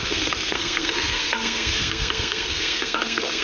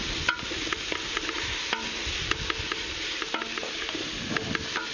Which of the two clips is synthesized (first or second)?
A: first